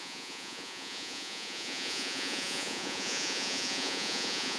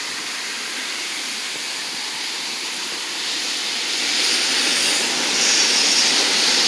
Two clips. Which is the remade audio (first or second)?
first